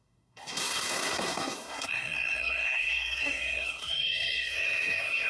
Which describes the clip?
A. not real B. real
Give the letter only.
A